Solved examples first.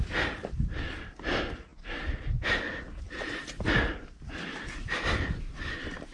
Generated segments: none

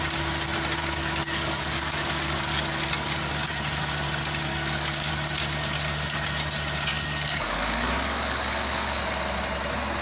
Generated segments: 0.8-2.9 (codec, DAC); 4.5-5.1; 6.9-9.0

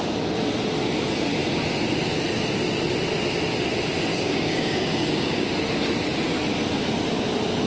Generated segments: 4.1-5.5 (codec, DAC)

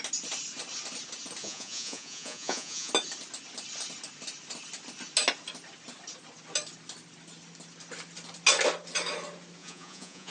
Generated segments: 1.4-2.9 (vocoder, Vocos); 9.6-10.3